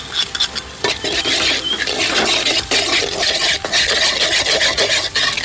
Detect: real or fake real